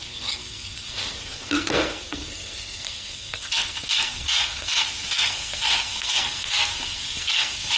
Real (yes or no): no